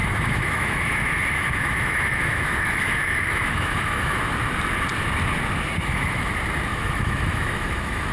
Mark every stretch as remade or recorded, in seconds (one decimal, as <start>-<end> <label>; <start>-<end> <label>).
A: 0.0-4.2 remade; 4.2-5.8 recorded; 5.8-6.3 remade; 6.3-6.7 recorded; 6.7-8.1 remade